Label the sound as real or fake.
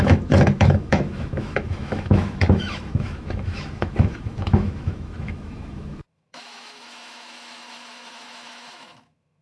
fake